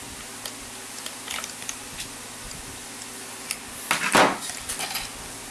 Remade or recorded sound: recorded